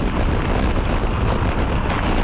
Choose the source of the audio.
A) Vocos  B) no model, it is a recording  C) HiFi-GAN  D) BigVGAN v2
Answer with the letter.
B